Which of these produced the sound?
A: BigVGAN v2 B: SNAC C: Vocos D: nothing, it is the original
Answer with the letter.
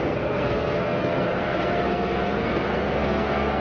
B